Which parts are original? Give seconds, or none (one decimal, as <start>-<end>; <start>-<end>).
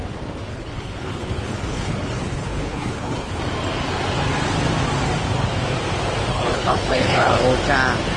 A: 0.0-0.5; 3.4-6.3; 7.4-8.2